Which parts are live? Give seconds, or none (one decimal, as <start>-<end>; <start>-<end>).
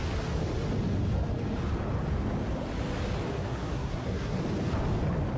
0.0-3.3; 4.4-5.4